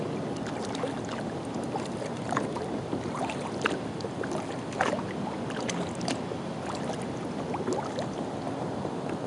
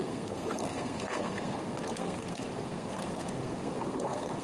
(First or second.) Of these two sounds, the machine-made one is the second